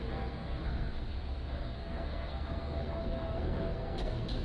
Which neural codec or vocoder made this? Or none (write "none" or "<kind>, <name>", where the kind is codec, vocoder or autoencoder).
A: codec, SNAC